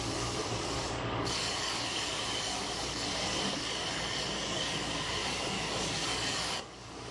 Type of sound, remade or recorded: remade